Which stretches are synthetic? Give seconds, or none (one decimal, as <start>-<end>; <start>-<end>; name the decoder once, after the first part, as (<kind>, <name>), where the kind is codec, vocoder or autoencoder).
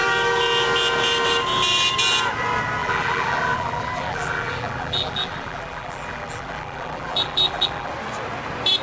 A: 2.8-7.9 (vocoder, BigVGAN v2)